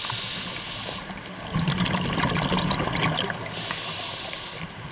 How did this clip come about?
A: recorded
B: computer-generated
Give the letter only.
A